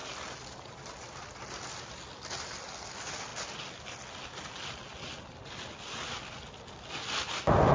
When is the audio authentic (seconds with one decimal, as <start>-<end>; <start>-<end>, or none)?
0.0-7.7